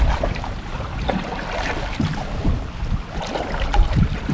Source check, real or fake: real